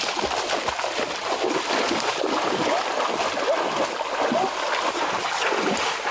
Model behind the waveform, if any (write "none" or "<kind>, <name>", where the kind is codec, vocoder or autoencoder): none